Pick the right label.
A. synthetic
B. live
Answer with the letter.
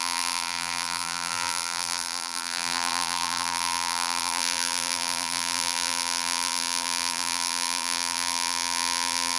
A